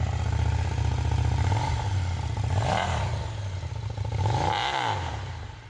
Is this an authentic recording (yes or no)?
yes